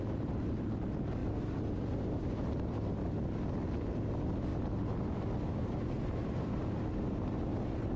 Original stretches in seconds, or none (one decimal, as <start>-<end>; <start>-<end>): 0.0-8.0